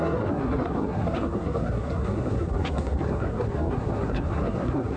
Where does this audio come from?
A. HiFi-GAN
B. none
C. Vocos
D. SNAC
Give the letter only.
D